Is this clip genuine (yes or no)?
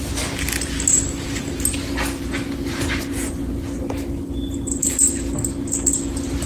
yes